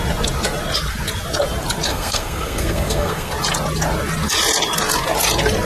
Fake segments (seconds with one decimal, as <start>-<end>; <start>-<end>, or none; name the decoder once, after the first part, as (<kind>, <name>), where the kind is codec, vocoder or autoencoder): 1.9-3.3 (codec, SNAC)